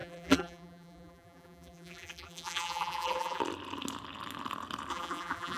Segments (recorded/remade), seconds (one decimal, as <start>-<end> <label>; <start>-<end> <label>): 0.0-3.4 remade; 3.4-4.9 recorded; 4.9-5.6 remade